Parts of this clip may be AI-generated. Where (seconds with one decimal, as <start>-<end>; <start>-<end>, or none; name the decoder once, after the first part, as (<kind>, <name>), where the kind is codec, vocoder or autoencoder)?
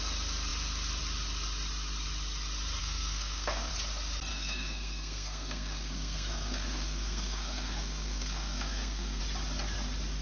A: 2.8-3.7 (codec, SNAC); 4.3-9.2